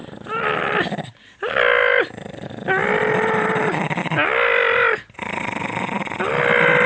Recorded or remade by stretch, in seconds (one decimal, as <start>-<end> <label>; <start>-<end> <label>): 0.0-6.9 recorded